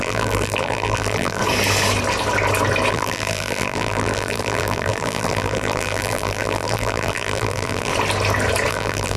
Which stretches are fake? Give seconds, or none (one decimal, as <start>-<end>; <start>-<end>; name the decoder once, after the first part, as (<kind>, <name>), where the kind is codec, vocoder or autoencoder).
0.0-1.4 (vocoder, BigVGAN v2); 2.9-7.9; 8.7-9.2